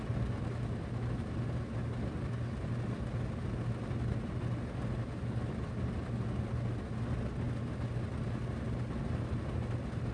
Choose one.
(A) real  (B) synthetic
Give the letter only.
A